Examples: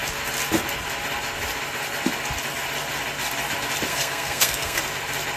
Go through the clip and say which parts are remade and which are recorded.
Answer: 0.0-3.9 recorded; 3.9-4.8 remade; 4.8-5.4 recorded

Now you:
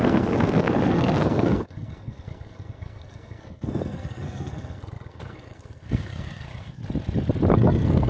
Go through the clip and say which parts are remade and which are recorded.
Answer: 0.0-6.8 remade; 6.8-7.5 recorded; 7.5-8.1 remade

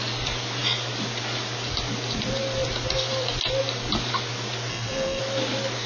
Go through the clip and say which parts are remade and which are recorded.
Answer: 0.0-4.7 recorded; 4.7-5.2 remade; 5.2-5.9 recorded